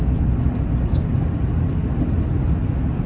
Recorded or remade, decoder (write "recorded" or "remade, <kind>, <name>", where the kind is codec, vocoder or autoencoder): recorded